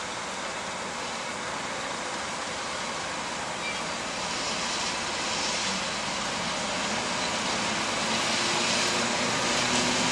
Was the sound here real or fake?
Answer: real